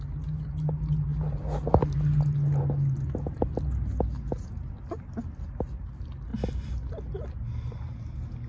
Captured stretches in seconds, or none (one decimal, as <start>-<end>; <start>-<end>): 0.0-8.5